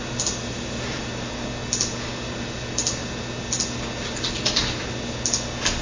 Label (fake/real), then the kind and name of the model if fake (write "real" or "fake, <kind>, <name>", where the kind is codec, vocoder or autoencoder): real